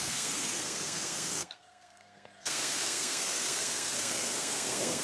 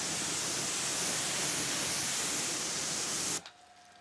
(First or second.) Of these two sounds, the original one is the second